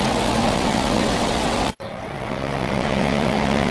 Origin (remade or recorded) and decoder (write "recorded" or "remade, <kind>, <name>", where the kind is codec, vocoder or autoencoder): remade, vocoder, WaveNeXt